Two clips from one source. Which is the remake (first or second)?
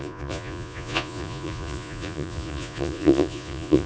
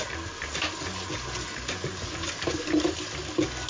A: first